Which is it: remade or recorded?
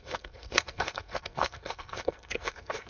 remade